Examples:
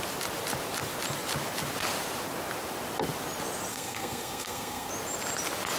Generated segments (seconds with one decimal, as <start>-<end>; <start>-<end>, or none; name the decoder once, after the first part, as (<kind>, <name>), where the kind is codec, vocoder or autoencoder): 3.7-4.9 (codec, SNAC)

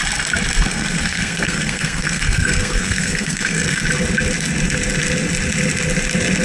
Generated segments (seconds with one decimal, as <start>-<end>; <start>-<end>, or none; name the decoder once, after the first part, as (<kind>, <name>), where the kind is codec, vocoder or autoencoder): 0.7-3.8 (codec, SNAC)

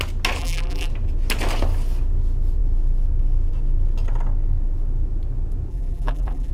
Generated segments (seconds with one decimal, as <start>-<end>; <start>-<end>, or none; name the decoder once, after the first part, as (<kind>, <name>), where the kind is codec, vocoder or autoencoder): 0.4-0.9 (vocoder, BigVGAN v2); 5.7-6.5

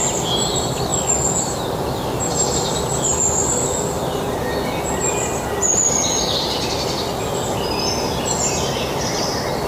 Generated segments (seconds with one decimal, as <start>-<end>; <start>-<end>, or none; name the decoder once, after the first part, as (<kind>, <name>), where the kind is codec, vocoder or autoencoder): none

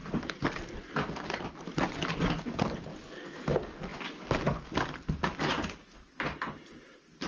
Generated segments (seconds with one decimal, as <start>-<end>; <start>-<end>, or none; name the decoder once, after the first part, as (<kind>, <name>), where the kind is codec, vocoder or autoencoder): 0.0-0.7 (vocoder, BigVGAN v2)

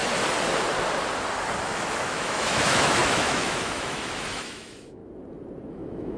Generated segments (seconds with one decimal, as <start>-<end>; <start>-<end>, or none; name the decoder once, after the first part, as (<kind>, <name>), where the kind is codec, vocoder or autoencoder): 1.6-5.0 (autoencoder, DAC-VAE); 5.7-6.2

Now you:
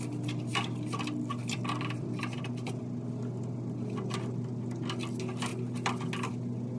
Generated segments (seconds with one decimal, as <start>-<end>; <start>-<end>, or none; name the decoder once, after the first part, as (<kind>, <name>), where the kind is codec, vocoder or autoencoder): 1.4-2.8 (vocoder, BigVGAN v2)

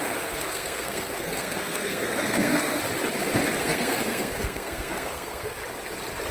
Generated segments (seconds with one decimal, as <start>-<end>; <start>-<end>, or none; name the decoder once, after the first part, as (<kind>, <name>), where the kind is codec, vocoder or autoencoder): 0.0-2.8 (codec, SNAC); 3.6-5.6